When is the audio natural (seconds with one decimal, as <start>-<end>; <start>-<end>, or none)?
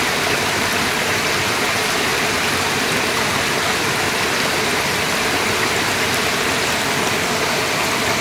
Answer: 0.0-8.2